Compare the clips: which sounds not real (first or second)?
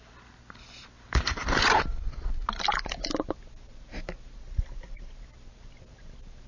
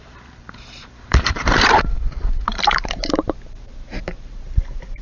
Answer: second